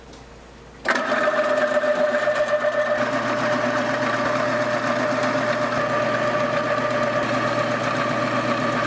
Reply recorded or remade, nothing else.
recorded